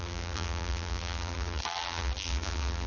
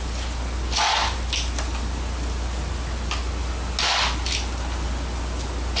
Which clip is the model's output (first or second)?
first